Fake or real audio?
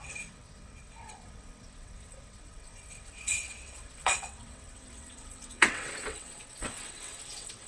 fake